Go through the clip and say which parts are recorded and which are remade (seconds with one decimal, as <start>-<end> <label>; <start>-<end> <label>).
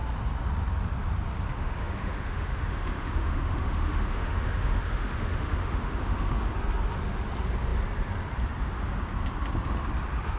0.0-1.5 recorded; 1.5-6.4 remade; 6.4-10.4 recorded